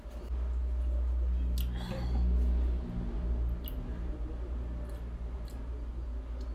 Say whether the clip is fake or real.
real